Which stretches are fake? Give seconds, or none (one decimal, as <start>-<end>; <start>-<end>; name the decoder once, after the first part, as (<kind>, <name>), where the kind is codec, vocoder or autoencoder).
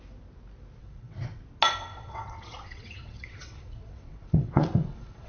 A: 0.8-1.4 (vocoder, WaveNeXt); 1.9-5.3